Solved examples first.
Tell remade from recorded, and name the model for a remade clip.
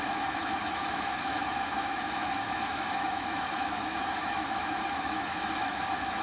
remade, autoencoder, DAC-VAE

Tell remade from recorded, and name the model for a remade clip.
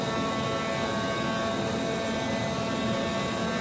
recorded